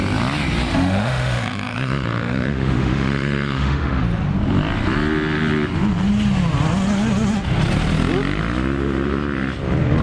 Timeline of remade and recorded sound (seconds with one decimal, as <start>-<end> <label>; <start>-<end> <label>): 0.0-0.7 recorded; 0.7-4.0 remade; 4.0-10.0 recorded